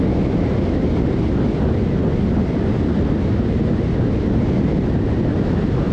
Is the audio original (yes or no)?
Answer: yes